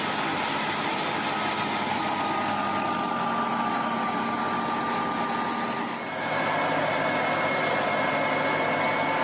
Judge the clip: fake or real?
real